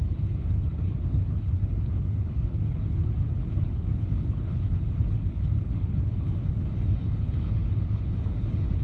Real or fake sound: fake